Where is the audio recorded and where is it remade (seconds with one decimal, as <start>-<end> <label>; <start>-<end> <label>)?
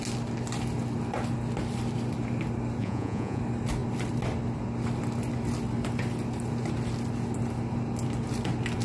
0.0-2.8 recorded; 2.8-3.4 remade; 3.4-8.8 recorded